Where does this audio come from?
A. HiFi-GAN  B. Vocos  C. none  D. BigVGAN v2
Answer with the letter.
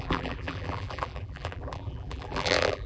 D